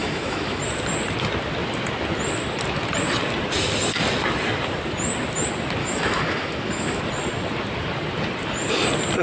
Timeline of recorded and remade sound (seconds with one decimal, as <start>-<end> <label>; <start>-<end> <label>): 0.0-0.6 remade; 0.6-5.8 recorded; 5.8-7.0 remade; 7.0-9.2 recorded